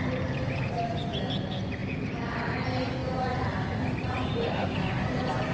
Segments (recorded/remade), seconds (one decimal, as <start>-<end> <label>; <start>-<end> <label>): 0.0-5.5 recorded